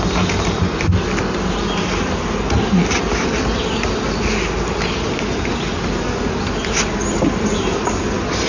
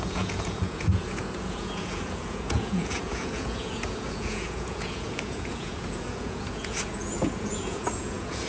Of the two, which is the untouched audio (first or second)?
first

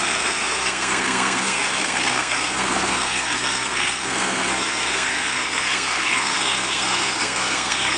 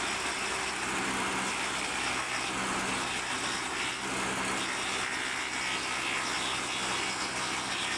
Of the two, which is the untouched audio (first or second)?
second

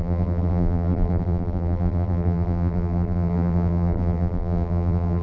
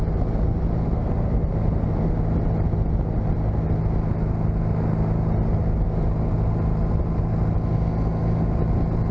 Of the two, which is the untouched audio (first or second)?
second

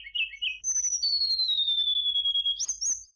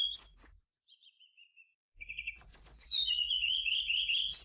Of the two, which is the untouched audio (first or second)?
first